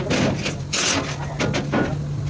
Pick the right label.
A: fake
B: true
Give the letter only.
B